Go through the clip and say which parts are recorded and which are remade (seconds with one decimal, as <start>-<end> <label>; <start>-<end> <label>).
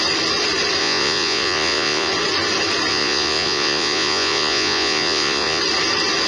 0.0-0.8 recorded; 0.8-2.1 remade; 2.1-2.9 recorded; 2.9-5.6 remade; 5.6-6.3 recorded